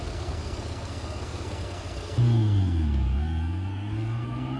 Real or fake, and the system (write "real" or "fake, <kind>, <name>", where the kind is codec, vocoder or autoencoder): fake, codec, SNAC